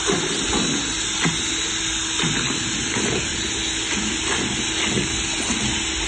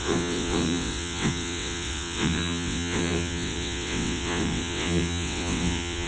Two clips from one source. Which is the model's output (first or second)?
second